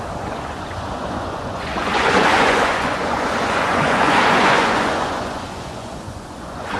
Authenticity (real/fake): fake